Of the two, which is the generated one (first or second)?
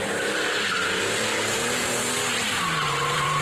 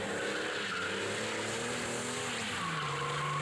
first